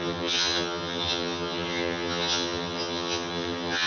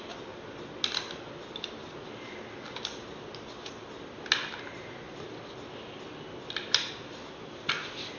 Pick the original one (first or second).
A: second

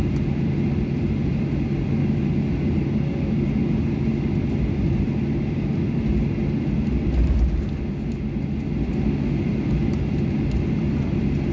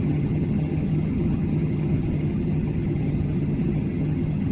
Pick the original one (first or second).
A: first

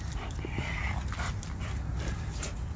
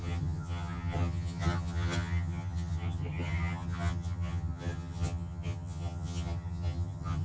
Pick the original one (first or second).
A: first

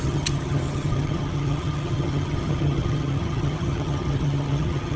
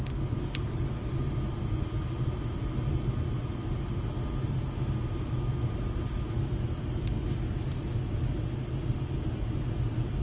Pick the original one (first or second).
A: second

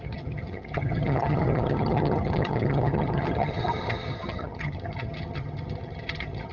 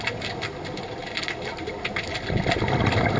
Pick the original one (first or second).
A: second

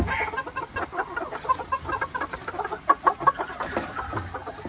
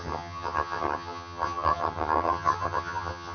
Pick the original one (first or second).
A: first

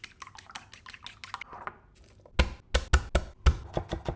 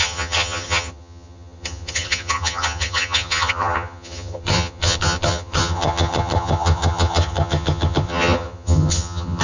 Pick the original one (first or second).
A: first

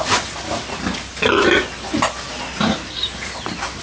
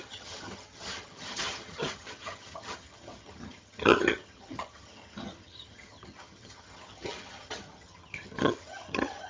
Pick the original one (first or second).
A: first